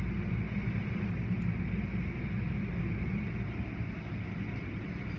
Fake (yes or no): no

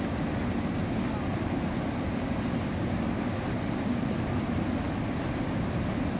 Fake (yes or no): no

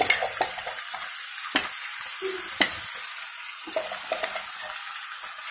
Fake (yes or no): no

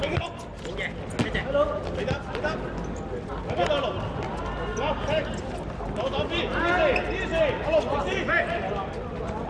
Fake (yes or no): no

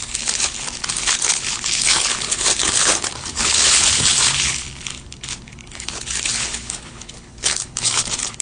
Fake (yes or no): yes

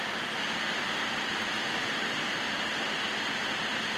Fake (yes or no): no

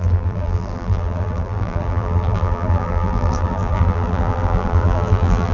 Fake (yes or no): yes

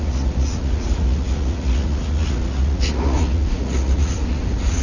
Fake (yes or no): yes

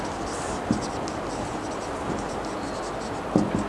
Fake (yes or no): no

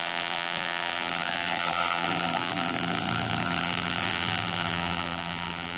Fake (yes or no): yes